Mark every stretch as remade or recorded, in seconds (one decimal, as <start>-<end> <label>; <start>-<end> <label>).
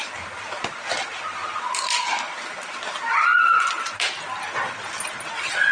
0.0-1.4 recorded; 1.4-2.7 remade; 2.7-5.7 recorded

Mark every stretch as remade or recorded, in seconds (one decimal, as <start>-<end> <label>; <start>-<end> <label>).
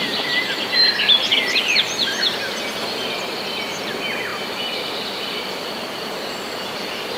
0.0-4.3 recorded; 4.3-7.2 remade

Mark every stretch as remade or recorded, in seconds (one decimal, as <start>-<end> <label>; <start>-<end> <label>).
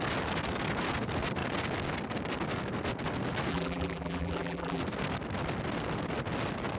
0.0-3.5 recorded; 3.5-4.8 remade; 4.8-6.8 recorded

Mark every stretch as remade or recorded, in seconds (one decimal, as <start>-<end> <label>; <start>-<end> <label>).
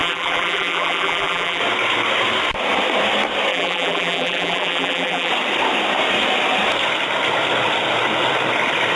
0.0-1.6 remade; 1.6-3.5 recorded; 3.5-5.3 remade; 5.3-9.0 recorded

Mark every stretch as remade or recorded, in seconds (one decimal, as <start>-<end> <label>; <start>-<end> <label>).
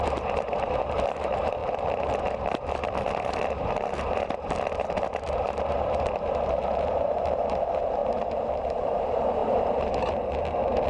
0.0-10.9 remade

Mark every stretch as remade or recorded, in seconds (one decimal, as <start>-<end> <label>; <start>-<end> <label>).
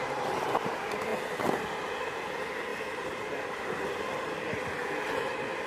0.0-1.1 recorded; 1.1-1.8 remade; 1.8-5.7 recorded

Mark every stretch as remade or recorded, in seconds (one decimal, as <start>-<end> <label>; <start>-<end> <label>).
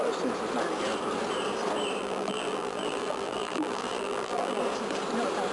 0.0-2.0 recorded; 2.0-4.6 remade; 4.6-5.5 recorded